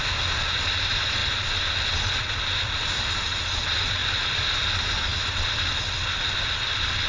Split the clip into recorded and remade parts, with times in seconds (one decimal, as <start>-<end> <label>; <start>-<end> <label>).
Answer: 0.0-7.1 recorded